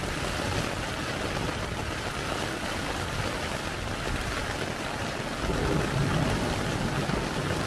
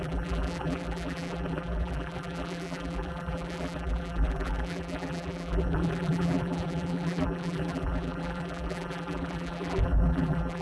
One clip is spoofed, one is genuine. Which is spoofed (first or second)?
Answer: second